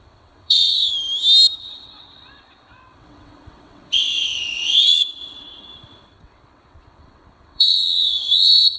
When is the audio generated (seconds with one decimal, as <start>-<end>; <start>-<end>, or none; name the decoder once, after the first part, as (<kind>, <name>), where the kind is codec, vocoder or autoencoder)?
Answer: 0.0-0.9 (vocoder, WaveNeXt); 1.6-8.8